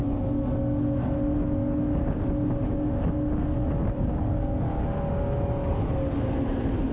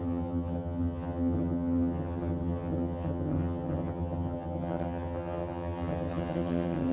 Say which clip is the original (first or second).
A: first